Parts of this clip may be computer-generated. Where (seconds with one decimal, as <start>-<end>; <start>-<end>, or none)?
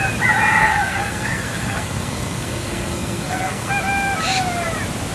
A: 0.6-3.7